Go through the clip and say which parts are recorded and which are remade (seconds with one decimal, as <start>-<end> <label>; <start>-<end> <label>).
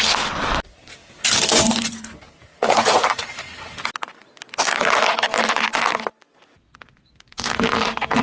0.0-8.2 recorded